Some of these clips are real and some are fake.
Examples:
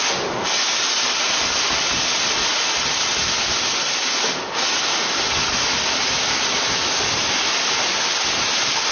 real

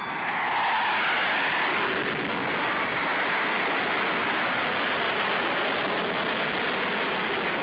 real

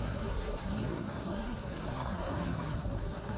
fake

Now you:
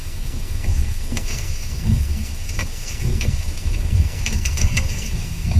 fake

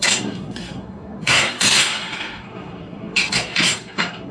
fake